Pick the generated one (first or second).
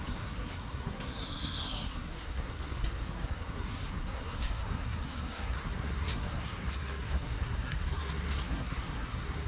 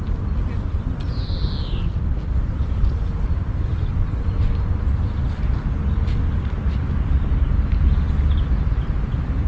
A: first